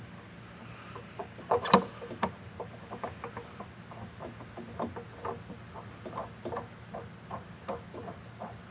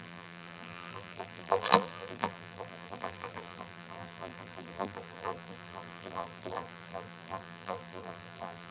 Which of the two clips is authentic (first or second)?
first